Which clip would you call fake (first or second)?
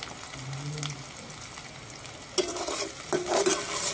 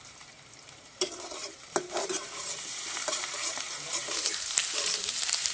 second